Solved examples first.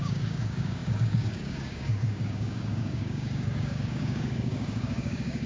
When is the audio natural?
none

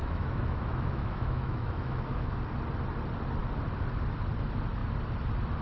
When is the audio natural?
2.3-5.6

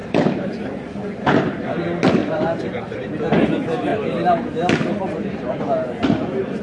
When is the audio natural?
1.1-2.2; 3.1-3.9; 5.6-6.6